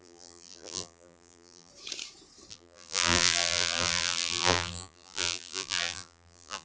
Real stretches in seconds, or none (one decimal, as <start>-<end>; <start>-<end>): 1.7-2.5